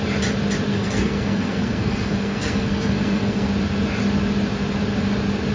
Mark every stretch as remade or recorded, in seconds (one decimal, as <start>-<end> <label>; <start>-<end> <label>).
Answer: 0.0-0.7 recorded; 0.7-3.5 remade; 3.5-5.5 recorded